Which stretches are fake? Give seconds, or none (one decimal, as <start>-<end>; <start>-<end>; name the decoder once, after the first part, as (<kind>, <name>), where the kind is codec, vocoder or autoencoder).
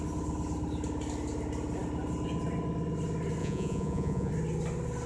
3.4-4.3 (vocoder, Vocos)